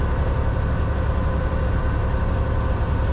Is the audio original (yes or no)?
yes